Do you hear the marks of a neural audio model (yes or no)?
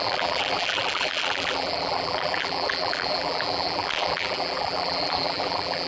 yes